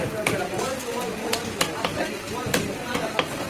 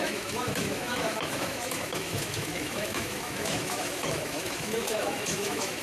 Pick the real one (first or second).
first